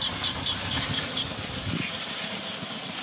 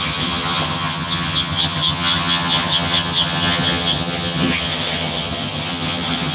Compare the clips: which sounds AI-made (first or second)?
second